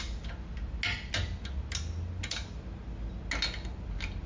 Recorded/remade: recorded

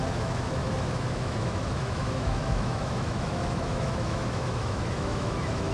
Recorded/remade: remade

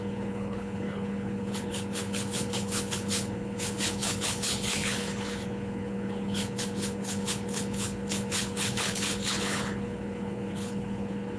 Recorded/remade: remade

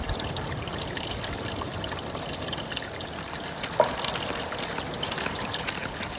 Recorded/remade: recorded